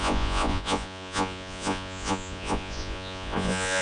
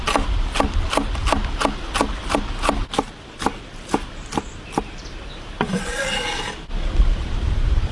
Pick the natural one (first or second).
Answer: second